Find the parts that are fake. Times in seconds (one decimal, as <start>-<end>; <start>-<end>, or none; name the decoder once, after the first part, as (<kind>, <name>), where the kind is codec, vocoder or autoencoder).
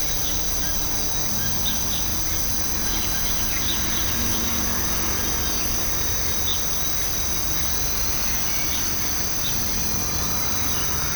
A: 2.1-5.6 (vocoder, Vocos)